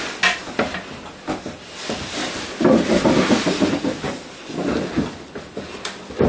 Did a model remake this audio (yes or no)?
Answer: no